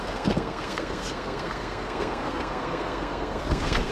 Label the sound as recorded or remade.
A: remade